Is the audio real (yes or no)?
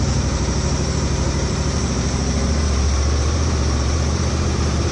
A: no